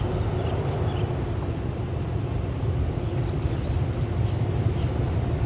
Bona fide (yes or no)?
yes